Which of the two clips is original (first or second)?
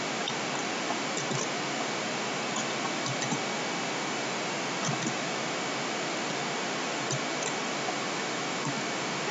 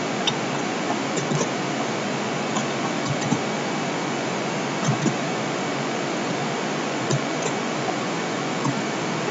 first